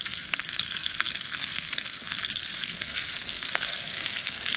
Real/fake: fake